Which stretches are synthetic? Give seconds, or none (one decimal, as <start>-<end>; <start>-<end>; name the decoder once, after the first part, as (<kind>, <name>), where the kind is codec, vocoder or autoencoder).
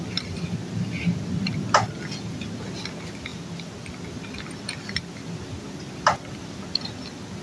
none